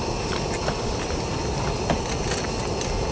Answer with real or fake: real